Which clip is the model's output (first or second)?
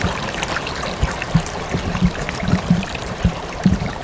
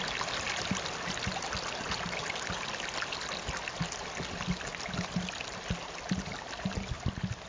first